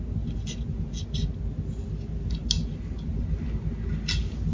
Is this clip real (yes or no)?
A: yes